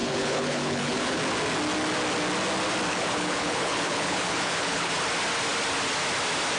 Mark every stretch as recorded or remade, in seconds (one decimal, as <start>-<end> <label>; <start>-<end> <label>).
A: 0.0-1.2 remade; 1.2-2.9 recorded; 2.9-4.9 remade; 4.9-6.6 recorded